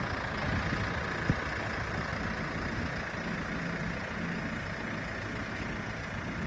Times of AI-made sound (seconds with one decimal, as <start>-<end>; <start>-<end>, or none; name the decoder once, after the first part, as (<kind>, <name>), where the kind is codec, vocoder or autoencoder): none

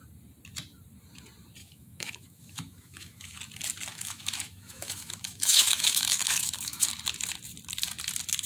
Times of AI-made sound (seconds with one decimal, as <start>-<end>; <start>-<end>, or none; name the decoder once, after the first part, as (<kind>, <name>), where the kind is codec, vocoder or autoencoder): 1.6-3.4 (autoencoder, DAC-VAE); 3.9-6.9

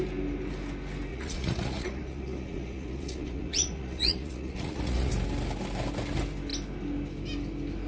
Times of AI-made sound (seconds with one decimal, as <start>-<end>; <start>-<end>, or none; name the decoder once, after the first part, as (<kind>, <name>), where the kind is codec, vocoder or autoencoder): 1.1-5.1 (vocoder, Vocos)

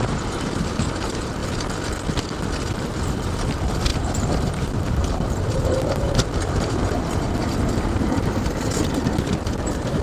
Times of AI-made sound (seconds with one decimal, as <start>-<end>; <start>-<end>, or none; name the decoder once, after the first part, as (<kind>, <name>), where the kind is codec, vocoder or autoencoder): 0.0-1.4 (vocoder, BigVGAN v2); 3.1-10.0

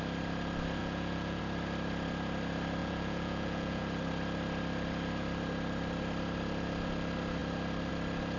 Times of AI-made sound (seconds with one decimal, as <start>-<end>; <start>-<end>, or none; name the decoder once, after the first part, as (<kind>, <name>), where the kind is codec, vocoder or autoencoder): 0.8-1.4 (vocoder, Vocos); 2.8-3.8

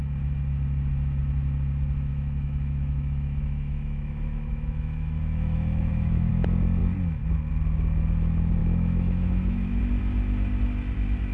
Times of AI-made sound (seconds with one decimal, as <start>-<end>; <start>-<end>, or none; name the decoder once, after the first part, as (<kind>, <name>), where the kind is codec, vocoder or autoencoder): 2.1-6.3 (autoencoder, DAC-VAE); 8.6-9.8

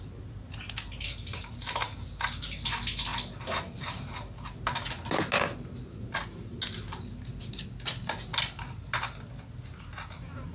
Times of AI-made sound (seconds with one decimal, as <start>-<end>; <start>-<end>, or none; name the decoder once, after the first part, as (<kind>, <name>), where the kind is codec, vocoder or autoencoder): none

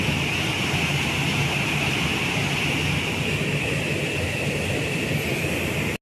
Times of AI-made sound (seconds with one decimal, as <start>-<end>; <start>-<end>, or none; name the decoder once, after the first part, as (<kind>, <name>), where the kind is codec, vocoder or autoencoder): none